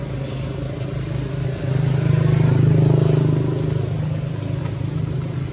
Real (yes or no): yes